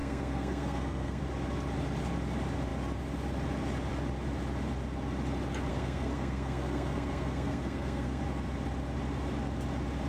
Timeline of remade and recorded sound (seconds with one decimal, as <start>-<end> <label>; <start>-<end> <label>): 0.0-1.2 remade; 1.2-5.7 recorded; 5.7-8.2 remade; 8.2-10.1 recorded